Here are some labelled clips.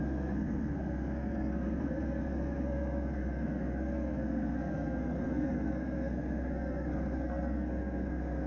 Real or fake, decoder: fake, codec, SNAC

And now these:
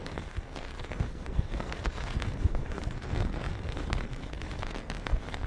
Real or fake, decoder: fake, codec, SNAC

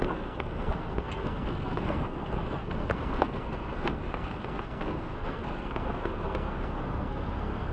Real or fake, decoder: fake, codec, SNAC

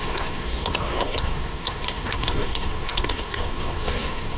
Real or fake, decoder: fake, codec, SNAC